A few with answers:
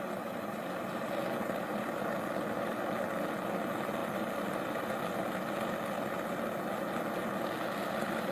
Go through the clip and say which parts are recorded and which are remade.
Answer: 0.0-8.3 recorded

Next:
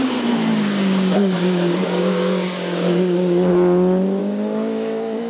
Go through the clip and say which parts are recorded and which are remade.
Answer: 0.0-0.5 recorded; 0.5-3.5 remade; 3.5-4.2 recorded; 4.2-5.3 remade

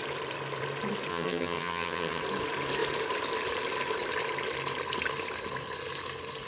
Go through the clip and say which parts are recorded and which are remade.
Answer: 0.0-1.1 recorded; 1.1-2.2 remade; 2.2-6.5 recorded